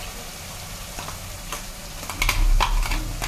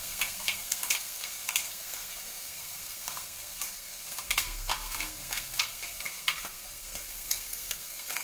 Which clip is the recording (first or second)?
first